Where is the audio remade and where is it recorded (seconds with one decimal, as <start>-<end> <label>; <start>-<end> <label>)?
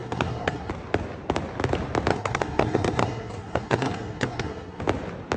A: 0.0-0.7 remade; 0.7-2.1 recorded; 2.1-4.8 remade; 4.8-5.4 recorded